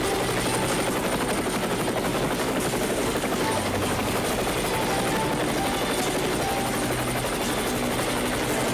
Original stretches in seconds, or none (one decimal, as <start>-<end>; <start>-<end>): 0.0-2.1; 4.3-8.7